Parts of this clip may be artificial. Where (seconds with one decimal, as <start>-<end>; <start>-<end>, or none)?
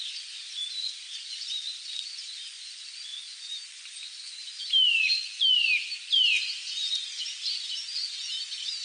none